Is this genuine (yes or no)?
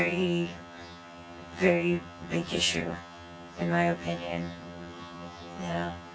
no